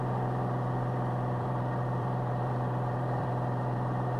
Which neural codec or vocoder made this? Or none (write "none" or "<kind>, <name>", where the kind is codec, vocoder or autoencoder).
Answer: vocoder, BigVGAN v2